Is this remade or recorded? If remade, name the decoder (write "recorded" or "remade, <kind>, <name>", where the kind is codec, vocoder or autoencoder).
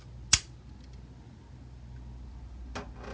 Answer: recorded